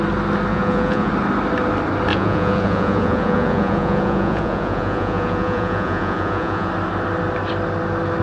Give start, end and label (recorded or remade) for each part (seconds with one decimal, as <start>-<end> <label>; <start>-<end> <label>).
0.0-0.5 recorded; 0.5-1.1 remade; 1.1-2.1 recorded; 2.1-6.7 remade; 6.7-8.2 recorded